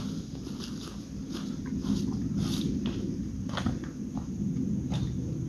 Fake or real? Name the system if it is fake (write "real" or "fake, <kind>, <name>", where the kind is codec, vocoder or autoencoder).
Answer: real